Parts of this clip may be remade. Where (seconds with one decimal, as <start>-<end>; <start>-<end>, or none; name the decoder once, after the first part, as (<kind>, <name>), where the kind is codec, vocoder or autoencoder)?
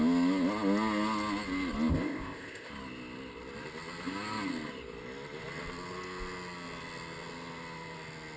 1.9-2.7 (codec, ZipCodec)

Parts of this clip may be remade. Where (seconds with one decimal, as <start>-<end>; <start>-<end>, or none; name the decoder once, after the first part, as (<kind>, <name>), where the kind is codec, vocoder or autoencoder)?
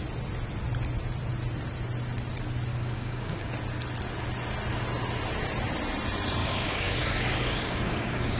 2.7-3.5 (codec, DAC); 6.4-8.4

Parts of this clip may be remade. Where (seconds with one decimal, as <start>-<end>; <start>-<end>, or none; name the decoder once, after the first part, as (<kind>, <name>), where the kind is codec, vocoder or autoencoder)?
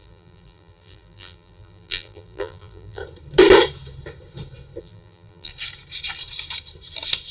0.0-3.0 (vocoder, BigVGAN v2); 4.8-5.5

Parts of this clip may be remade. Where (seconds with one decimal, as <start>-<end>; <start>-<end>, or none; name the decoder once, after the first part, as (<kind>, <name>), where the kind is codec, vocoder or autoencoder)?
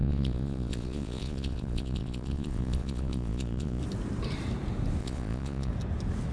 0.0-3.8 (vocoder, Vocos); 5.0-5.7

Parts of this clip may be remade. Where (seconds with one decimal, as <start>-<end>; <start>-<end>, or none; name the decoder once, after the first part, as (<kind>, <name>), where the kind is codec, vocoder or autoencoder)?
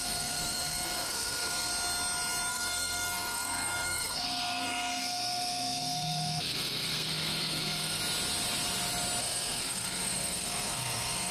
0.0-1.7 (codec, SNAC); 2.5-8.0; 9.2-11.3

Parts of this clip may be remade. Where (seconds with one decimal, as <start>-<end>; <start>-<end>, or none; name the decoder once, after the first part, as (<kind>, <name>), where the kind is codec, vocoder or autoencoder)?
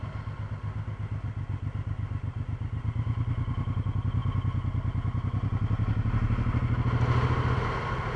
none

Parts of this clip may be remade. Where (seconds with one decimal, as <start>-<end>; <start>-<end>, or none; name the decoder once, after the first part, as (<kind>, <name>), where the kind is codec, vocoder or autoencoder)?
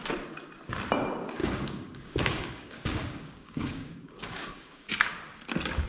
1.4-4.9 (codec, DAC)